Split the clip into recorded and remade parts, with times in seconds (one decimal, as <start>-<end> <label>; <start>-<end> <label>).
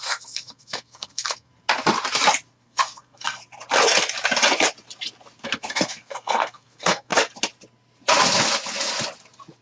0.0-1.5 remade; 1.5-2.5 recorded; 2.5-3.4 remade; 3.4-5.4 recorded; 5.4-7.1 remade; 7.1-9.6 recorded